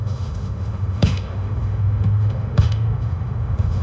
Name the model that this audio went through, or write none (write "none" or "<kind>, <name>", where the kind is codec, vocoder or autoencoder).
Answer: autoencoder, DAC-VAE